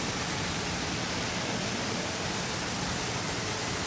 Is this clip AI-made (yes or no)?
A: no